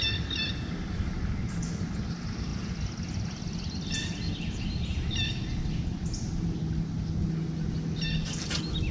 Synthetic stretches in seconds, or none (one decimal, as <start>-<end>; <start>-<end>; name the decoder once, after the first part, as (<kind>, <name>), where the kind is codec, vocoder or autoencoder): none